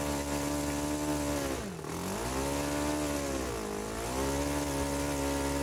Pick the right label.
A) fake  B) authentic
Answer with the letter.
B